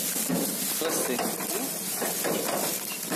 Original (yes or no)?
yes